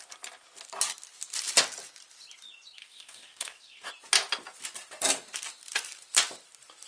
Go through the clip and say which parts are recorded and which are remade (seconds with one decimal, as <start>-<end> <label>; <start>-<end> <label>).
0.0-2.8 recorded; 2.8-3.9 remade; 3.9-6.9 recorded